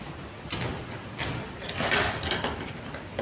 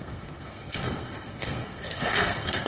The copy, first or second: second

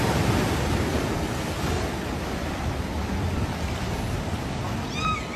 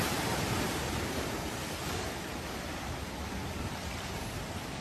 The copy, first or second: second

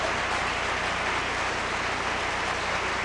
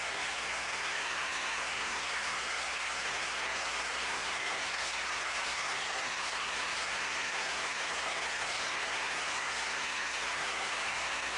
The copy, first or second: second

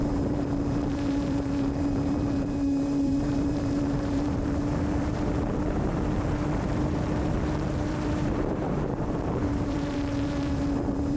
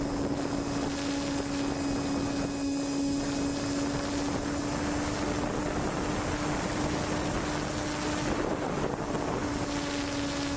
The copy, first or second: first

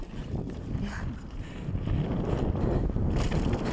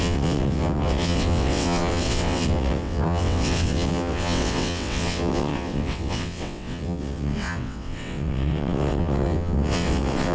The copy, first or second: second